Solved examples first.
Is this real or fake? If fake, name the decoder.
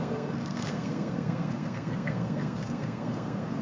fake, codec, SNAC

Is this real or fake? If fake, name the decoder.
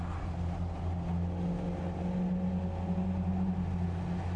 real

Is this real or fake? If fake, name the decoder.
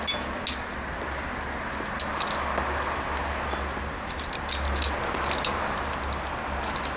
real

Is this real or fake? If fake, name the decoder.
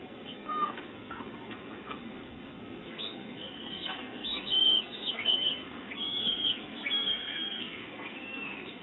fake, codec, SNAC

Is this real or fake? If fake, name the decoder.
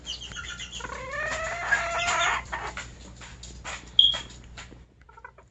real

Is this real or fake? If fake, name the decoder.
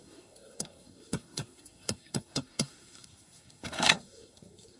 fake, codec, SNAC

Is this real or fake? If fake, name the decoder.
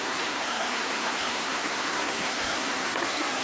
fake, codec, SNAC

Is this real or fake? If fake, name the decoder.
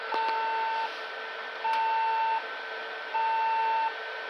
real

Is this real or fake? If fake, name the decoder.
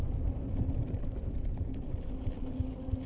real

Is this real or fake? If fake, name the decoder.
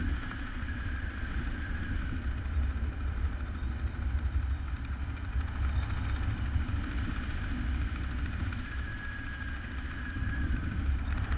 real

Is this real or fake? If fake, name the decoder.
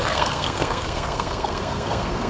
fake, codec, SNAC